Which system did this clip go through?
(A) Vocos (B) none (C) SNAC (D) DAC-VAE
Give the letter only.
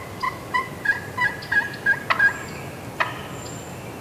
B